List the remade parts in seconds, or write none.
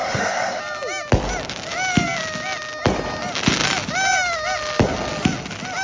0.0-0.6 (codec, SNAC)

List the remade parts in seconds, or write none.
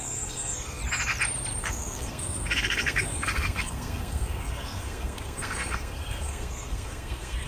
0.0-0.8 (codec, SNAC); 1.6-7.5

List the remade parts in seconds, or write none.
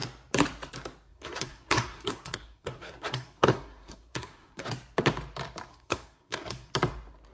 1.1-4.6 (codec, SNAC); 5.7-6.7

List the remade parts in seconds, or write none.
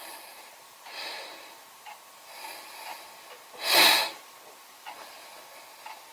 none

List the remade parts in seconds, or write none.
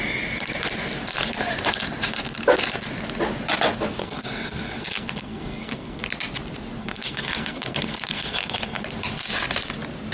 4.0-6.0 (codec, SNAC); 6.8-8.8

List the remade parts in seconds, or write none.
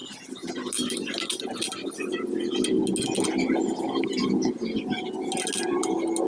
none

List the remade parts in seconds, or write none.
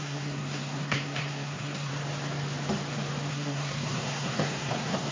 0.0-1.9 (codec, SNAC); 3.3-5.1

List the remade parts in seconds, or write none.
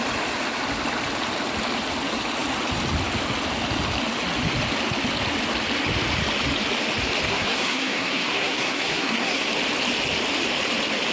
7.3-9.5 (codec, SNAC)